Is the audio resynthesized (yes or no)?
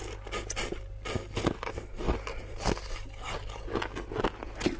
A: no